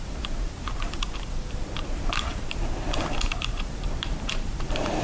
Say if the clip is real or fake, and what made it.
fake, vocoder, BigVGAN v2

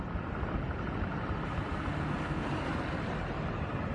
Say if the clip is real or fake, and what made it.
real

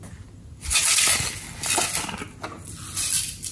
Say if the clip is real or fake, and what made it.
real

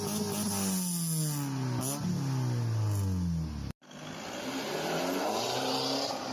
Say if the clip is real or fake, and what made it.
real